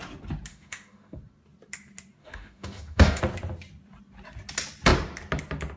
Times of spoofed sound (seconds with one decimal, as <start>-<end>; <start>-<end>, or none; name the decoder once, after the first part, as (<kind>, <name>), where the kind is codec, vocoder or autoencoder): 0.5-1.2 (autoencoder, DAC-VAE); 2.2-3.2